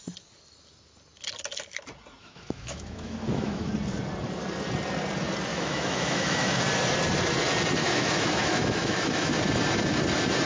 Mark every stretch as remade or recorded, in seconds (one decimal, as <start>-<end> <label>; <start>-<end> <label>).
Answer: 0.0-2.2 recorded; 2.2-3.7 remade; 3.7-5.5 recorded; 5.5-6.6 remade; 6.6-7.8 recorded; 7.8-9.4 remade; 9.4-10.5 recorded